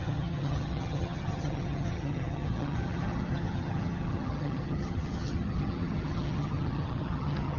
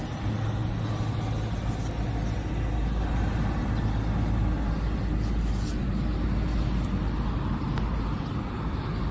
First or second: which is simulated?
first